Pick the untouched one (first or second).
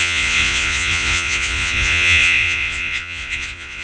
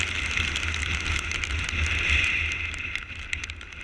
second